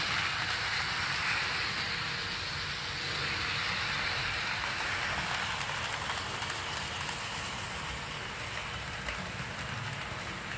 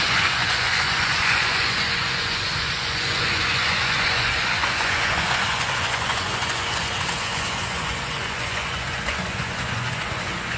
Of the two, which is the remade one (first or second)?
second